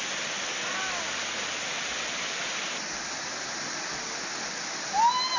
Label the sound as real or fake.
real